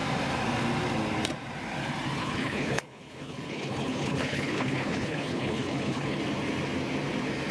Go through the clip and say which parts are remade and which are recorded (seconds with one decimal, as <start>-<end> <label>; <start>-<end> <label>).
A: 0.0-2.2 recorded; 2.2-6.2 remade; 6.2-7.5 recorded